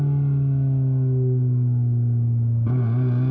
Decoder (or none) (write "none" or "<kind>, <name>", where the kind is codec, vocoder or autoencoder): none